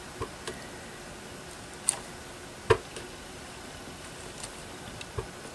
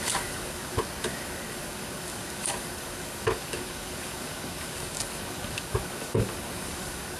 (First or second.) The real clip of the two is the first